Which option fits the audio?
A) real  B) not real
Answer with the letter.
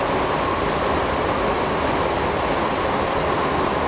A